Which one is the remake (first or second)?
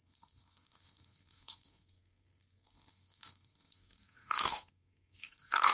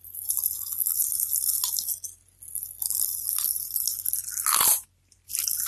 first